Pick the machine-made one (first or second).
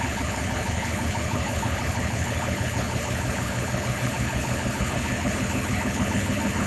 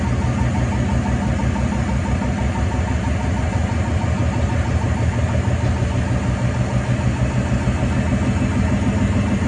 first